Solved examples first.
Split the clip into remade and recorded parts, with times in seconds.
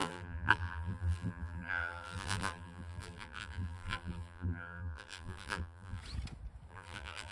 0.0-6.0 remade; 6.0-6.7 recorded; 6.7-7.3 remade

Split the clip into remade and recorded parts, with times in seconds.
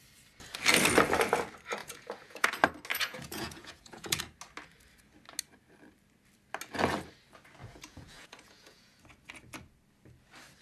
0.0-1.8 recorded; 1.8-2.5 remade; 2.5-2.9 recorded; 2.9-4.2 remade; 4.2-7.6 recorded; 7.6-9.0 remade; 9.0-10.6 recorded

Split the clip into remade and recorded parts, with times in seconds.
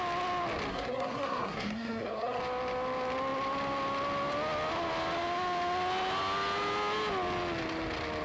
0.0-0.7 recorded; 0.7-2.4 remade; 2.4-8.2 recorded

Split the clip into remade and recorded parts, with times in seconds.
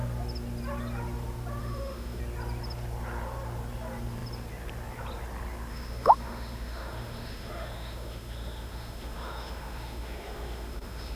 0.0-1.6 recorded; 1.6-2.2 remade; 2.2-5.7 recorded; 5.7-11.2 remade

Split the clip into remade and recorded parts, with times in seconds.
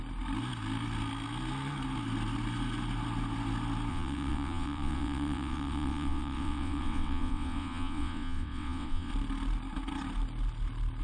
0.0-3.9 recorded; 3.9-9.1 remade; 9.1-11.0 recorded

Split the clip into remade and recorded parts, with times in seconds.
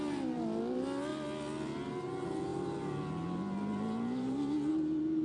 0.0-5.2 recorded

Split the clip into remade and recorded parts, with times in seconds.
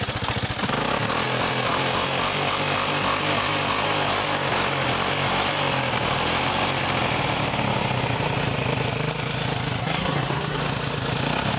0.0-9.8 recorded; 9.8-10.6 remade; 10.6-11.6 recorded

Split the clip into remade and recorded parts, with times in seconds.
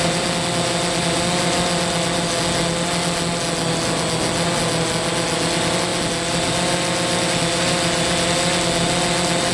0.0-9.5 recorded